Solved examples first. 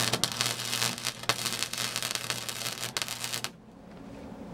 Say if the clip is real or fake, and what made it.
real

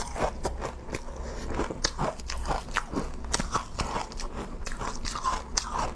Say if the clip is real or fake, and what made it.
real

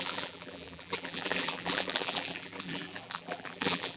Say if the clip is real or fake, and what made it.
fake, vocoder, BigVGAN v2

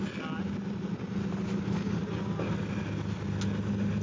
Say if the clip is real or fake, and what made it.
real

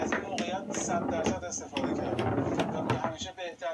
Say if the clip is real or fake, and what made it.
real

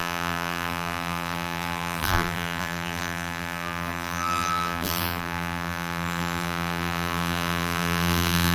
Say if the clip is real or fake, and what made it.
fake, vocoder, BigVGAN v2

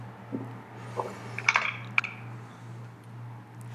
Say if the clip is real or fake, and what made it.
real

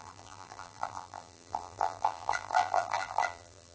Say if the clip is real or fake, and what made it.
fake, vocoder, BigVGAN v2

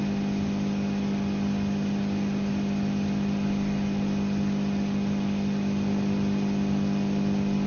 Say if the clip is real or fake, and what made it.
real